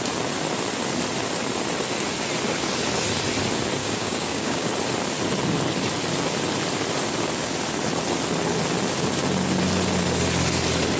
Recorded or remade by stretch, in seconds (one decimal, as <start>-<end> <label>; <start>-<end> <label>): 0.0-3.8 recorded; 3.8-4.7 remade; 4.7-11.0 recorded